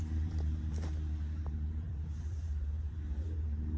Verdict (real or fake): fake